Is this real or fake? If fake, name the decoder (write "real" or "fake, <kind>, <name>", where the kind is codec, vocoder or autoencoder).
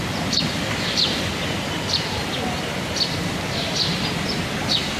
fake, vocoder, BigVGAN v2